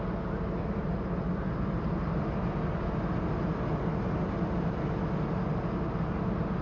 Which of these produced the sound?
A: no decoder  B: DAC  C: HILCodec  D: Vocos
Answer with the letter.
A